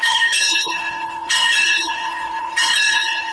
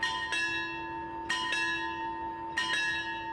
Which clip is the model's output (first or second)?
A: first